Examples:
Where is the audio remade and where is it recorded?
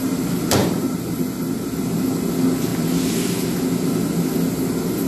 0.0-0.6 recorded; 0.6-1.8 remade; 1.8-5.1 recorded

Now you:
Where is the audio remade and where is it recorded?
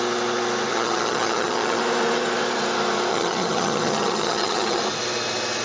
0.0-0.7 recorded; 0.7-1.8 remade; 1.8-3.1 recorded; 3.1-4.8 remade; 4.8-5.6 recorded